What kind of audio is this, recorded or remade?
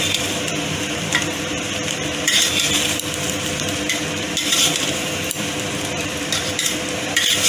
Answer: remade